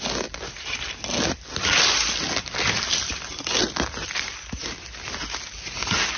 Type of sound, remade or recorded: recorded